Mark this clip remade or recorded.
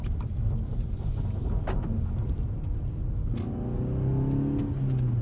recorded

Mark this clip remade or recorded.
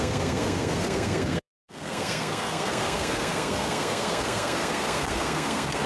remade